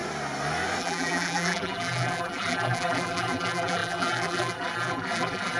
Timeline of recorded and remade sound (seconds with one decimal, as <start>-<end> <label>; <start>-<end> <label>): 0.0-0.8 recorded; 0.8-5.6 remade